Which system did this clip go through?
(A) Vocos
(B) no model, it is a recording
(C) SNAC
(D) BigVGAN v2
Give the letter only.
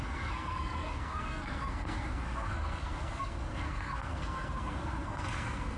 C